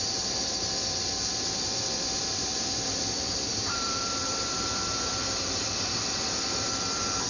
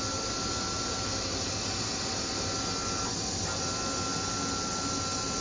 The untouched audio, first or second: second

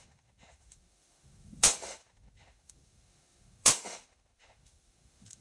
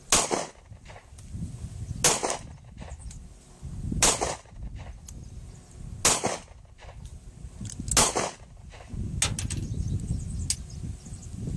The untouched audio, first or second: second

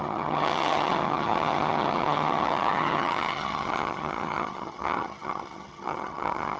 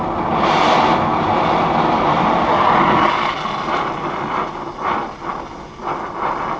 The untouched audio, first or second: second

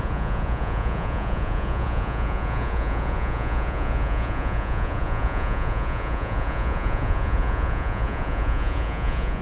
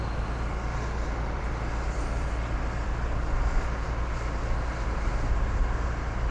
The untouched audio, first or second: second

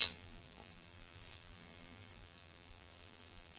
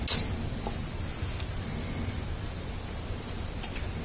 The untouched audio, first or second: second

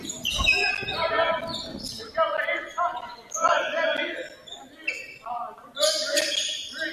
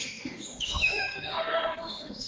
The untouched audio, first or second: first